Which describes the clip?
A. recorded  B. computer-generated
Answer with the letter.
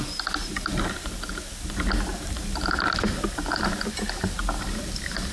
A